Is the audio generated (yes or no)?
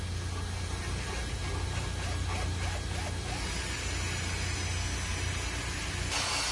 no